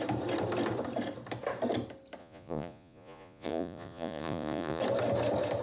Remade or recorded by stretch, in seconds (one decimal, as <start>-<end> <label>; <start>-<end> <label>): 0.0-2.2 recorded; 2.2-4.8 remade; 4.8-5.6 recorded